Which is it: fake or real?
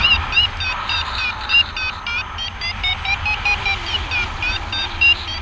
real